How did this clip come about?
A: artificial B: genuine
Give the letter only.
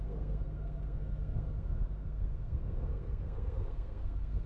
A